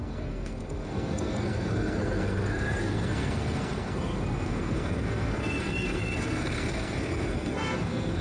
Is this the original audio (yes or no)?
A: no